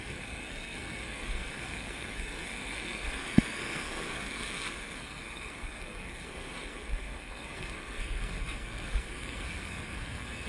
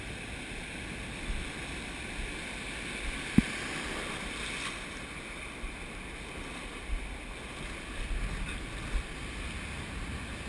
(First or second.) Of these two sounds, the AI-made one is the first